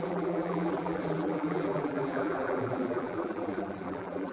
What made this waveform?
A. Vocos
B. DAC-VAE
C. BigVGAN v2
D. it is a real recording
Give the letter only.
C